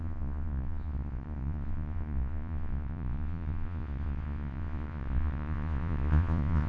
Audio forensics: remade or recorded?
remade